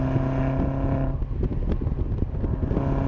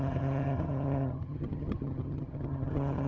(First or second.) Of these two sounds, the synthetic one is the second